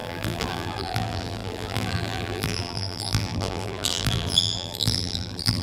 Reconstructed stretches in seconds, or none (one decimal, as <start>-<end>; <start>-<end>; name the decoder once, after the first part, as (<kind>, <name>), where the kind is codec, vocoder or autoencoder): 0.0-5.6 (vocoder, BigVGAN v2)